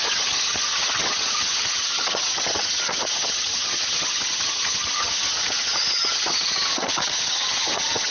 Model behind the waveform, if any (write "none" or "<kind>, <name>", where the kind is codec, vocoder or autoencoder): vocoder, HiFi-GAN